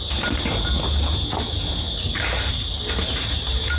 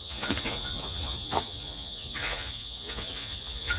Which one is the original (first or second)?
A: first